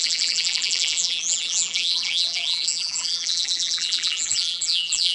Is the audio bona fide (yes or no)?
no